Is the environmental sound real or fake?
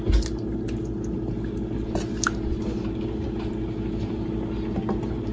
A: real